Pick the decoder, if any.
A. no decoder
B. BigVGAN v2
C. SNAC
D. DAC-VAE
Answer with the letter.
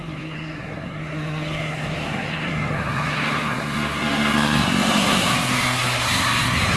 C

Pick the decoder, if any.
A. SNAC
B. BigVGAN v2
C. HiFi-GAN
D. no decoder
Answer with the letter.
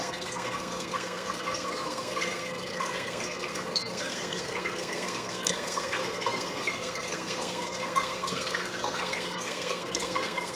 A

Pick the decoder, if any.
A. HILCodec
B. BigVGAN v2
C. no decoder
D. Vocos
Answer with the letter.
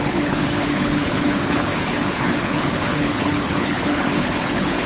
A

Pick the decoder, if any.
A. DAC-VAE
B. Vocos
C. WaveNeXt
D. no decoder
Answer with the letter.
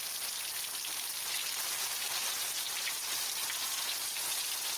D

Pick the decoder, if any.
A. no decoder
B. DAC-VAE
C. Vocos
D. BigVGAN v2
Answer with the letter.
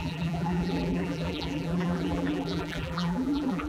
D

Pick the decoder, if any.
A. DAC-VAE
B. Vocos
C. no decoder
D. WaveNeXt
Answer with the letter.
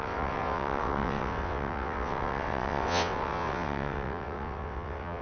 D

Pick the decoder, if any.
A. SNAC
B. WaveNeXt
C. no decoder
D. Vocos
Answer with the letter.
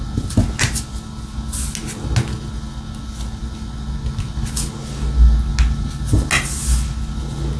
C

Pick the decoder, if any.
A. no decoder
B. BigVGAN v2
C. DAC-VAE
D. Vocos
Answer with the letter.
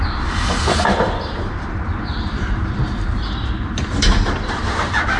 B